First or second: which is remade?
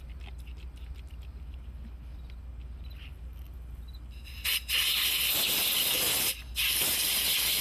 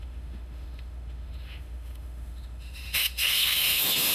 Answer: second